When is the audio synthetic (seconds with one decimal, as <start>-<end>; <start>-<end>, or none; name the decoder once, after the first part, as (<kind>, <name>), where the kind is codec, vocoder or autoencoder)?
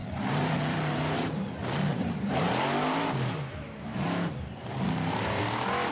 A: 0.0-1.5 (vocoder, BigVGAN v2); 1.9-5.4